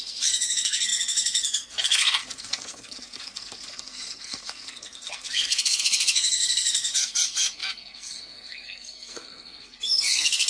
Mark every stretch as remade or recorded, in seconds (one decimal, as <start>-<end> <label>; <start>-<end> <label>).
0.0-10.5 remade